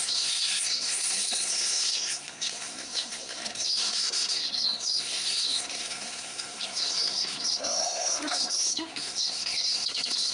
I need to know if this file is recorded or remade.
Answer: remade